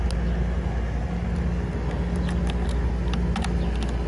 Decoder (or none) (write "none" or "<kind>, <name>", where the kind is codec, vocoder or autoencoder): none